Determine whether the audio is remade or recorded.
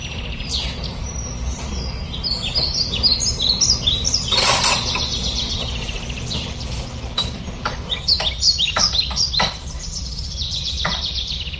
remade